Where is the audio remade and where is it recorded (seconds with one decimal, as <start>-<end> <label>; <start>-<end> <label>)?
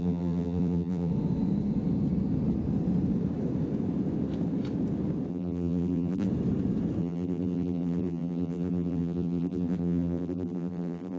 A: 0.0-1.1 remade; 1.1-5.3 recorded; 5.3-6.3 remade; 6.3-7.0 recorded; 7.0-11.2 remade